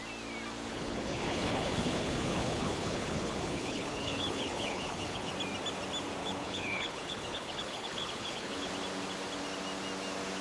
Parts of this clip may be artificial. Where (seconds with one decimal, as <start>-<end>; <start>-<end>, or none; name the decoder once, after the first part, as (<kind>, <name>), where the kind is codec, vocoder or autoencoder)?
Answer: 0.7-5.3 (codec, HILCodec); 6.2-8.7